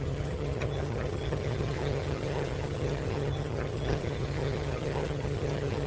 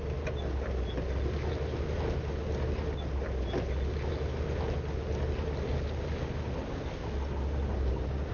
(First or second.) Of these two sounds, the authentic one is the second